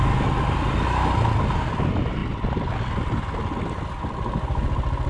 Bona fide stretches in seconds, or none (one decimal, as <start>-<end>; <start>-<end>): 0.0-5.1